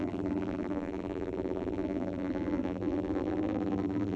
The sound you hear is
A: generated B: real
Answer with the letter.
A